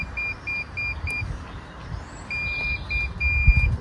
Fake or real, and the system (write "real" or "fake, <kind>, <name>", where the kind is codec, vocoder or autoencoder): real